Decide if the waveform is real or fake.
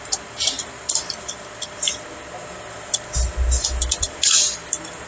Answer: real